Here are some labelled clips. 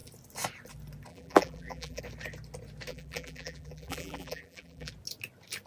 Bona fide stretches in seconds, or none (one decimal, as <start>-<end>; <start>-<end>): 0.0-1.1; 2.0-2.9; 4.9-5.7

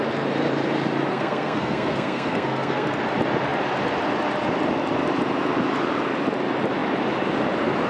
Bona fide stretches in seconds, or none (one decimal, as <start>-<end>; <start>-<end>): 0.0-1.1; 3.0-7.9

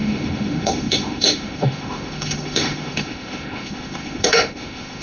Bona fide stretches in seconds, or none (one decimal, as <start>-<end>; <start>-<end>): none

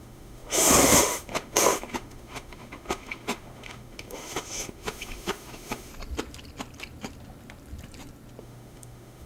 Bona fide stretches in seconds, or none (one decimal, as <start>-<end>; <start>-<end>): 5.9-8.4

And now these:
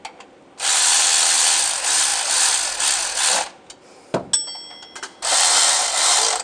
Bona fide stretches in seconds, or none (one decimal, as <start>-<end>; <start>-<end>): 0.0-6.4